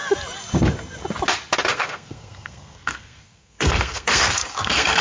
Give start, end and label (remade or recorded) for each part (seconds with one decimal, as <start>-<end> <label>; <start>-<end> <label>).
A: 0.0-1.7 recorded; 1.7-5.0 remade